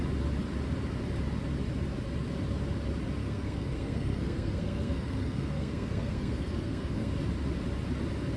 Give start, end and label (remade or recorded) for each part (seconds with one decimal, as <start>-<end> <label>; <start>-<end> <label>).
0.0-3.2 recorded; 3.2-7.1 remade; 7.1-8.4 recorded